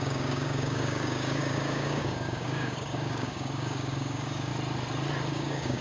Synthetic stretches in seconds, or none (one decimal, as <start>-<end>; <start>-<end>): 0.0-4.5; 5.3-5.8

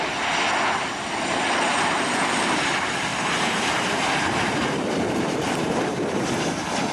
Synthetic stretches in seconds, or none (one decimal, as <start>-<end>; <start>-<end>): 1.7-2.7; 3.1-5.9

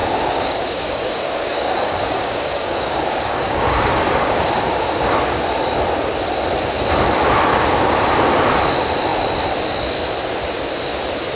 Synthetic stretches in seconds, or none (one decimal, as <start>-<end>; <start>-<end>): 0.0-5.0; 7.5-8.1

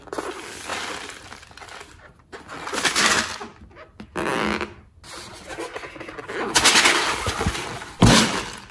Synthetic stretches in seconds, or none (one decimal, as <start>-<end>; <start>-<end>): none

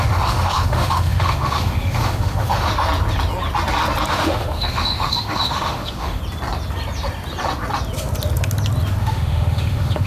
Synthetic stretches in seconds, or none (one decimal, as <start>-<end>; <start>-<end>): 0.0-2.7; 4.1-6.2; 9.0-10.1